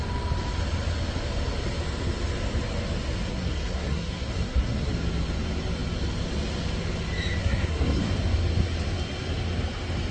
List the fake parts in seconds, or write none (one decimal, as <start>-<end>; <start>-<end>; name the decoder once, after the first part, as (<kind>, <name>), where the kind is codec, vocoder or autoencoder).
3.3-4.9 (codec, SNAC); 7.4-8.0